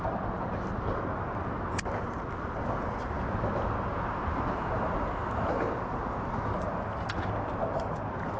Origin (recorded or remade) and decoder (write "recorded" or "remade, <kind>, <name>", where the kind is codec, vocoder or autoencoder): recorded